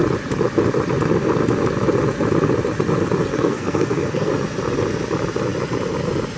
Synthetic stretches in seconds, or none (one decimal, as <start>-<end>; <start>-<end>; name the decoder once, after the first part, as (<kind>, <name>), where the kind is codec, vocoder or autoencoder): 3.3-4.3 (codec, SNAC)